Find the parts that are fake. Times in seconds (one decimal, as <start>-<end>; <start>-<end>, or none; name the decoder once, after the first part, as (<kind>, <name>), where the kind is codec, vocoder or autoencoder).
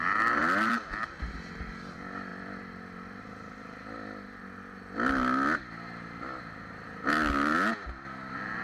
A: 0.4-1.3 (vocoder, BigVGAN v2); 2.3-4.4